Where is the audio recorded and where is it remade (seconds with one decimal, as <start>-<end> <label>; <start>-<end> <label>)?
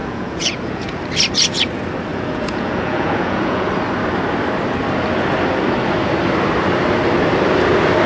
0.0-1.0 remade; 1.0-2.1 recorded; 2.1-3.7 remade; 3.7-8.1 recorded